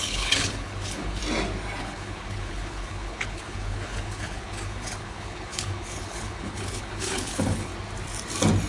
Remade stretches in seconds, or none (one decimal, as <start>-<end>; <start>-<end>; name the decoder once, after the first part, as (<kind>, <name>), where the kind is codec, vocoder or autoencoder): 0.0-1.2 (codec, HILCodec); 1.8-7.7